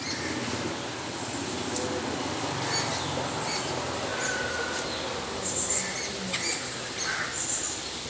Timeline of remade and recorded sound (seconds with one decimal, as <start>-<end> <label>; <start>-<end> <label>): 0.0-8.1 recorded